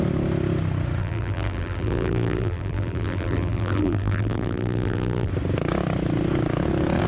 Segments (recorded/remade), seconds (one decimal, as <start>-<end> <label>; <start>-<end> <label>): 0.0-1.0 recorded; 1.0-5.3 remade; 5.3-7.1 recorded